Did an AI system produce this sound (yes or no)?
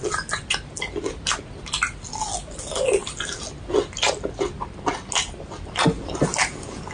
no